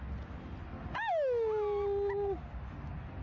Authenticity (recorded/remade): recorded